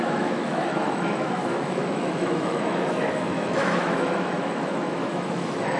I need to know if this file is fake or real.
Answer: fake